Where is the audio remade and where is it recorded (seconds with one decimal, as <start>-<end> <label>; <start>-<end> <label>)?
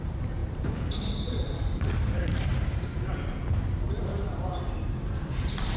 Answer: 0.0-2.5 remade; 2.5-3.9 recorded; 3.9-5.8 remade